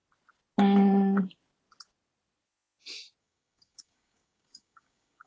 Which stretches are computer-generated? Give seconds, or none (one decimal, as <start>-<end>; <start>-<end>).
3.2-5.3